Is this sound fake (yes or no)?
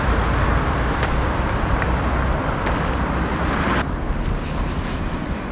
no